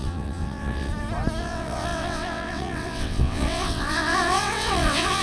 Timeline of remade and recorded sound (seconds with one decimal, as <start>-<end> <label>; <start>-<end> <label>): 0.0-0.9 remade; 0.9-1.4 recorded; 1.4-5.2 remade

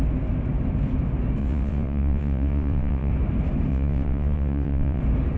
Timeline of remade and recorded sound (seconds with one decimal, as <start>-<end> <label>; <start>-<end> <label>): 0.0-1.4 recorded; 1.4-3.1 remade; 3.1-3.7 recorded; 3.7-5.0 remade; 5.0-5.4 recorded

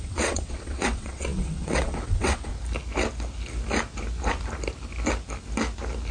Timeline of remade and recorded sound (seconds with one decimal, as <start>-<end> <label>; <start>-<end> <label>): 0.0-2.5 remade; 2.5-6.1 recorded

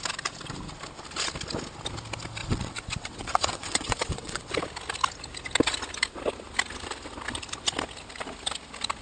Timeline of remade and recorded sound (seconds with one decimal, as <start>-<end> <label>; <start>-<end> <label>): 0.0-2.4 recorded; 2.4-4.5 remade; 4.5-9.0 recorded